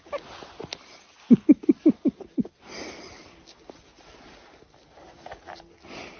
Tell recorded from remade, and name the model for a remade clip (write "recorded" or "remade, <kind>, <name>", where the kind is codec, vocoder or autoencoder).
recorded